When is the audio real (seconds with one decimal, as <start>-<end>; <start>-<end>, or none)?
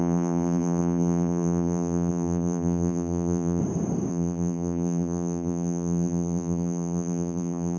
3.6-4.1